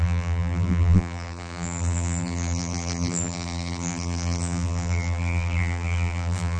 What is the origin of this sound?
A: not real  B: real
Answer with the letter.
A